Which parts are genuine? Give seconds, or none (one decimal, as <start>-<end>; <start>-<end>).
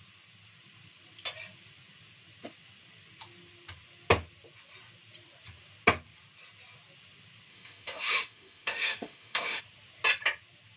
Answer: 0.0-7.5; 9.6-10.8